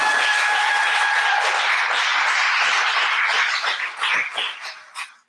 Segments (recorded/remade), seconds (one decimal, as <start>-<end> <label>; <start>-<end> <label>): 0.0-5.3 recorded